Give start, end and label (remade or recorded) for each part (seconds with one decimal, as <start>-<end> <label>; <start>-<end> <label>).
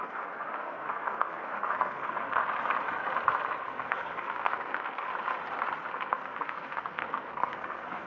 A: 0.0-2.4 remade; 2.4-3.6 recorded; 3.6-5.1 remade; 5.1-5.9 recorded; 5.9-8.1 remade